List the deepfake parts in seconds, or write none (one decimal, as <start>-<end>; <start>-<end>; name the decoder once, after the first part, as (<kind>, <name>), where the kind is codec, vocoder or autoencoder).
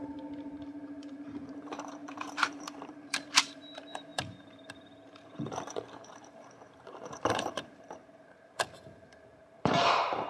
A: 0.0-10.3 (vocoder, BigVGAN v2)